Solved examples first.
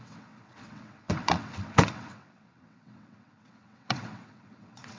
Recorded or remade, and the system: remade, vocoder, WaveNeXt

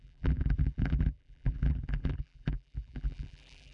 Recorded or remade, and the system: remade, vocoder, BigVGAN v2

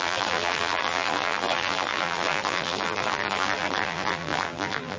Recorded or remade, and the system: remade, vocoder, BigVGAN v2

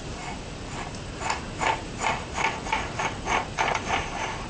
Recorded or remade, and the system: remade, vocoder, BigVGAN v2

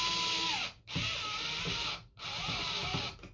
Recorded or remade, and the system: recorded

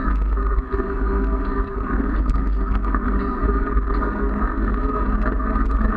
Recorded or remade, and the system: remade, codec, SNAC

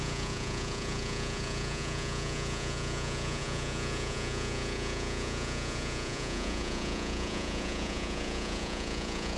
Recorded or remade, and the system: remade, vocoder, Vocos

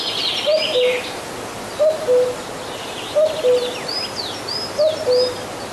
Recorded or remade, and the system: recorded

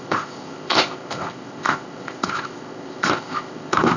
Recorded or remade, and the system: remade, codec, ZipCodec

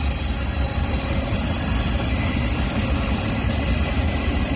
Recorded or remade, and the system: recorded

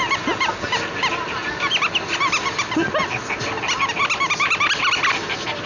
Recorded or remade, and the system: recorded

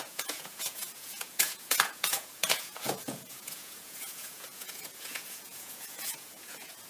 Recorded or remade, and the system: remade, vocoder, Vocos